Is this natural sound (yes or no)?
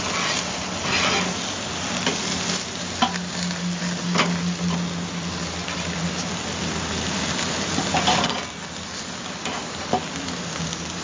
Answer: yes